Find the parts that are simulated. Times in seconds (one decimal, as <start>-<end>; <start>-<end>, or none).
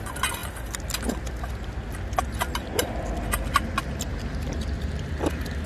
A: none